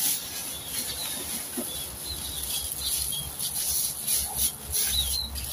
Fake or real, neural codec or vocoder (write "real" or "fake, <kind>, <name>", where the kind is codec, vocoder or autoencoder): real